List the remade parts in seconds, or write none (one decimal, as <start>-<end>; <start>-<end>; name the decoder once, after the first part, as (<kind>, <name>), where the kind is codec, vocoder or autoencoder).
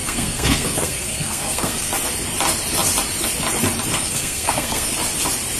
0.0-1.9 (codec, SNAC); 3.9-4.9